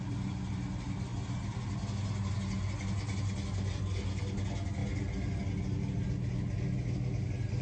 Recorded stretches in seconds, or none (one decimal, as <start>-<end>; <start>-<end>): 0.0-7.6